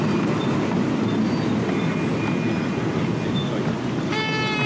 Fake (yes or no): no